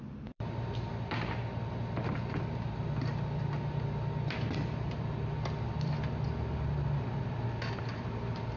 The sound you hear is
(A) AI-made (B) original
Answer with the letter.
A